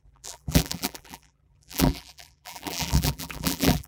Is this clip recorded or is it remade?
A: remade